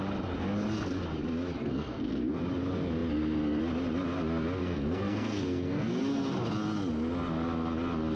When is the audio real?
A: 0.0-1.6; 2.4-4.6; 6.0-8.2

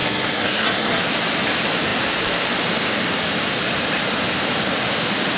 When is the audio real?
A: 1.0-5.4